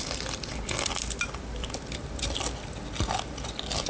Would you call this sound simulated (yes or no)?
no